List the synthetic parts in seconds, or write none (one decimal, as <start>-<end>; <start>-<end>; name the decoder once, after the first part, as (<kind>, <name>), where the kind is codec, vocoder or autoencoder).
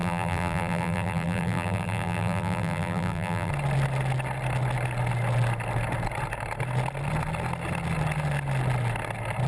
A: 0.0-3.5 (vocoder, BigVGAN v2)